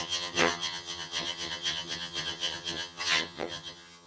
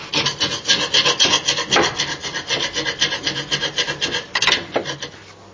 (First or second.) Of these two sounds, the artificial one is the first